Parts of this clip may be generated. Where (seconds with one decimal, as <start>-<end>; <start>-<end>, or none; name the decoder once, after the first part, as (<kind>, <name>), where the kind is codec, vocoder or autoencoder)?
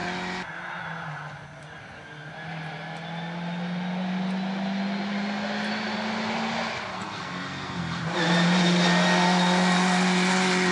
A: 6.9-8.0 (codec, SNAC)